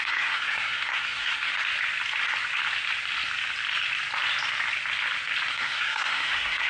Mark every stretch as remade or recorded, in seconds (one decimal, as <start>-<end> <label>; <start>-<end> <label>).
0.0-1.5 remade; 1.5-5.5 recorded; 5.5-6.7 remade